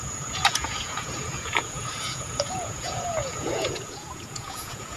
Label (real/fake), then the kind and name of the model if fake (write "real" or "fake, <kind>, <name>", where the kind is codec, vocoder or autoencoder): fake, vocoder, Vocos